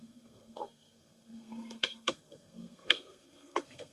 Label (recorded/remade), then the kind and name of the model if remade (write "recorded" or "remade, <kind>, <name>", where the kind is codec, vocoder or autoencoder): remade, codec, SNAC